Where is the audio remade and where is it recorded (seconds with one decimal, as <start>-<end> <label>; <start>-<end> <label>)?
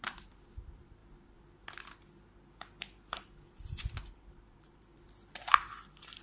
0.0-6.2 recorded